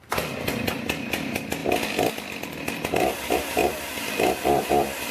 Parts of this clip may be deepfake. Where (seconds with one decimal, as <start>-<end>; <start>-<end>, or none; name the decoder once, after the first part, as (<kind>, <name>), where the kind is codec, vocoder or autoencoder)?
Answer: none